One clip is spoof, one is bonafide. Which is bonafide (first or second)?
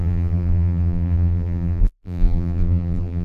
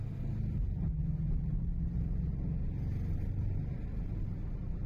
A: second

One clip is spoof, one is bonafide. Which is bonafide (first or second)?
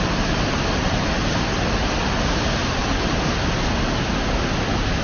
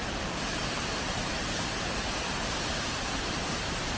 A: first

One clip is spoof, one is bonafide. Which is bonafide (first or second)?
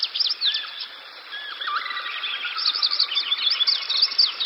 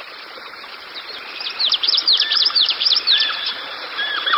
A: first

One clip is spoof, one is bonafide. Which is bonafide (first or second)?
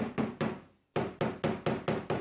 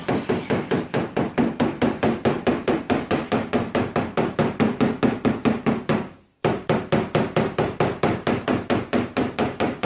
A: first